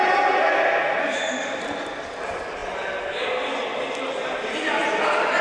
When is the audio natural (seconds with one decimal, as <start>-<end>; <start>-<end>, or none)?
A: 0.0-1.0; 1.6-5.4